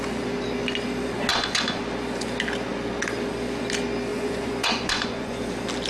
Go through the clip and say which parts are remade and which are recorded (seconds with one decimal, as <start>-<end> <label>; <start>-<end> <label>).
0.0-1.3 recorded; 1.3-1.8 remade; 1.8-4.1 recorded; 4.1-5.4 remade; 5.4-5.9 recorded